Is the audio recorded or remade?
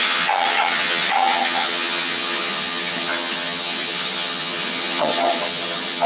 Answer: remade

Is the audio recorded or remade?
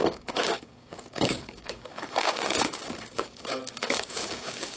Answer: remade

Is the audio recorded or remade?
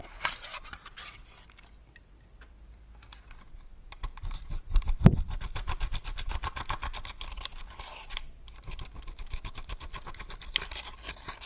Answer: remade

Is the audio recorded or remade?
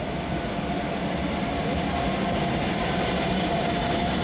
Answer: recorded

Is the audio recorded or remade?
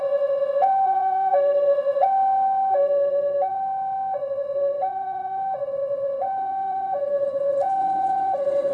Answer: remade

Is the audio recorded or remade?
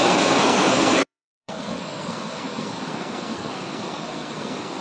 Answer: remade